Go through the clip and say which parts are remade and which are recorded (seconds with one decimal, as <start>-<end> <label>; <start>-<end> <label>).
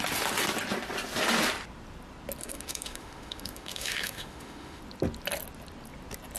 0.0-2.4 recorded; 2.4-4.8 remade; 4.8-6.4 recorded